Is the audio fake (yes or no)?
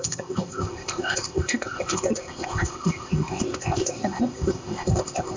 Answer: yes